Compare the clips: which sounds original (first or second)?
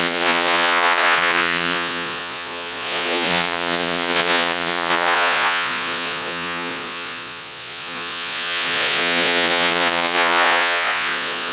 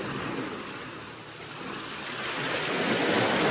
second